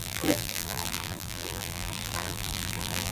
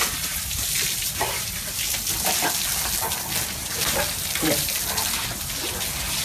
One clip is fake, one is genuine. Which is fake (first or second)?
first